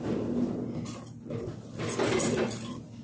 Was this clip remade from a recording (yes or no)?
no